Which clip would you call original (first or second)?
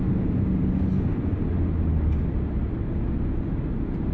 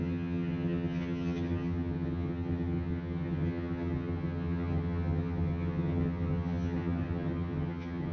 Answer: first